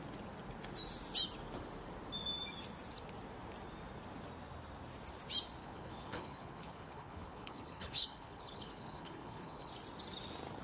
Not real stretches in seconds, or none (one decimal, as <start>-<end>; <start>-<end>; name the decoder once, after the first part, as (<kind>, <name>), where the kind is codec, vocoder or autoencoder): 5.6-9.7 (codec, HILCodec)